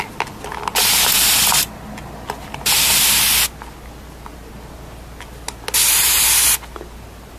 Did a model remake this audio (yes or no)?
no